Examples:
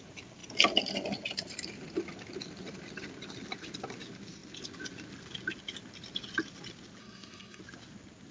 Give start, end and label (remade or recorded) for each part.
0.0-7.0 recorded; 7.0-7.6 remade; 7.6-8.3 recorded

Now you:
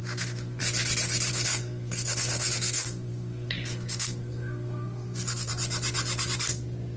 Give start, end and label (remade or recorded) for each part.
0.0-0.6 remade; 0.6-1.3 recorded; 1.3-5.5 remade; 5.5-7.0 recorded

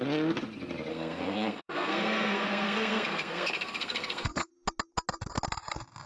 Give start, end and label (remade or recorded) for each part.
0.0-0.9 recorded; 0.9-4.5 remade; 4.5-6.1 recorded

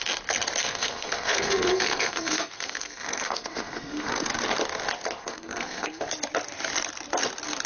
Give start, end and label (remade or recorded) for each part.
0.0-0.6 recorded; 0.6-4.3 remade; 4.3-5.2 recorded; 5.2-6.0 remade; 6.0-7.7 recorded

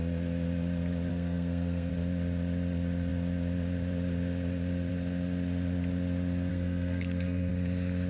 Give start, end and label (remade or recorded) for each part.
0.0-1.1 recorded; 1.1-1.9 remade; 1.9-6.5 recorded; 6.5-7.5 remade; 7.5-8.1 recorded

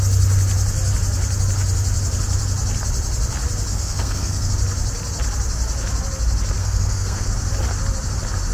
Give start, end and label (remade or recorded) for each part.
0.0-3.7 recorded; 3.7-4.5 remade; 4.5-6.6 recorded; 6.6-7.3 remade; 7.3-8.5 recorded

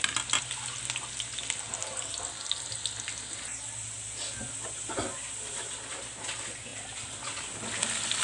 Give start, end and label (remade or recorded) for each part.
0.0-8.2 recorded